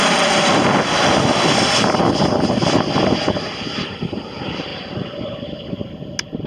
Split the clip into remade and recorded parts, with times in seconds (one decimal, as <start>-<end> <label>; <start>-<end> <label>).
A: 0.0-6.5 recorded